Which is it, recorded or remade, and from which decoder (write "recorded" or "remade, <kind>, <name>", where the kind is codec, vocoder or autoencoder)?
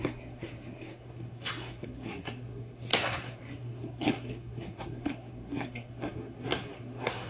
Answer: remade, codec, SNAC